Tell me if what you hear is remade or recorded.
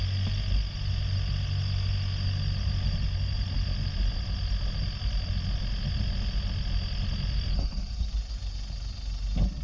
recorded